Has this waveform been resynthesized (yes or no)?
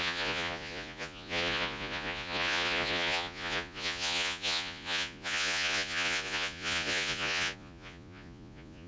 yes